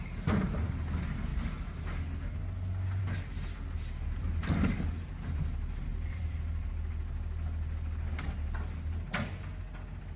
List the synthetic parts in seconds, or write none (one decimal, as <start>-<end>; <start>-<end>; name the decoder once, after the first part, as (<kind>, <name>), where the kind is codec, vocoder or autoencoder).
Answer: 5.9-6.7 (vocoder, BigVGAN v2)